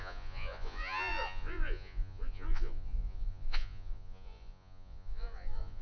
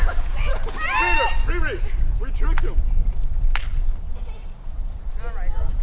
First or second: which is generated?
first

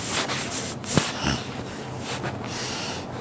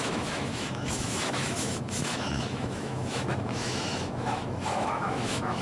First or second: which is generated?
second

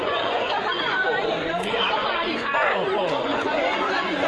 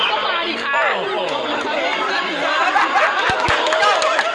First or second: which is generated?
first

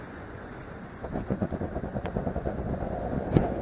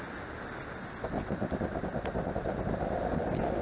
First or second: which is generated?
first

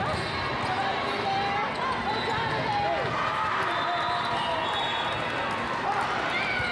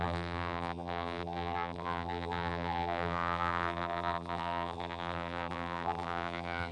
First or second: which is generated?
second